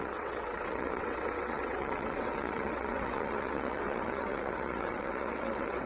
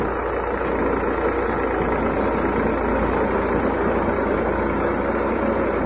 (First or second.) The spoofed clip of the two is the first